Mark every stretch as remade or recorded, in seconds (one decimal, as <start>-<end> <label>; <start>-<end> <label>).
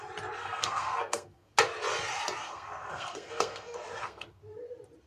0.0-0.4 recorded; 0.4-1.5 remade; 1.5-2.4 recorded; 2.4-4.4 remade; 4.4-5.1 recorded